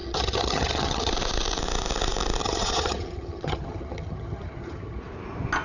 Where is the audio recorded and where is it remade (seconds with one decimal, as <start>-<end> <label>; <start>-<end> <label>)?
0.0-1.1 remade; 1.1-2.4 recorded; 2.4-5.0 remade; 5.0-5.6 recorded